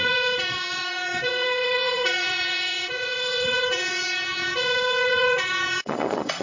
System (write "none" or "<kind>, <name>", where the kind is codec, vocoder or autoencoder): vocoder, Vocos